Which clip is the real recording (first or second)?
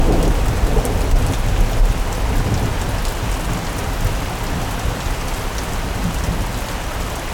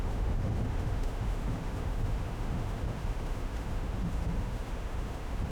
first